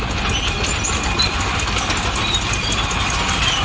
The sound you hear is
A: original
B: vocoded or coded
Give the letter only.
A